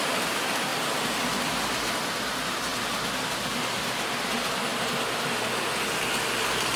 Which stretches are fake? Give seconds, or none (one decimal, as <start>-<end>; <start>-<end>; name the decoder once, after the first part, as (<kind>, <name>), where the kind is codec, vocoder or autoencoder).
none